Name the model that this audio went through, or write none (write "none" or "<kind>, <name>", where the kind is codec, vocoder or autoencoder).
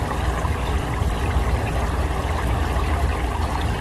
none